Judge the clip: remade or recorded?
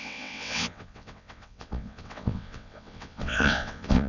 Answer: remade